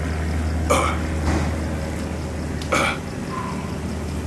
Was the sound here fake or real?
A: real